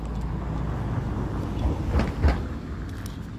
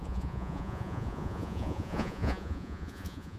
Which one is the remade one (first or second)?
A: second